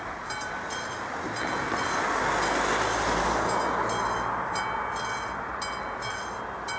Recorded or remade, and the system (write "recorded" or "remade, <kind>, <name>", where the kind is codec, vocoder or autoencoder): recorded